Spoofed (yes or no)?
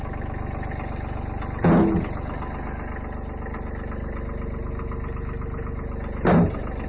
no